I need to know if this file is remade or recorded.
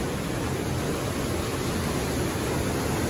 recorded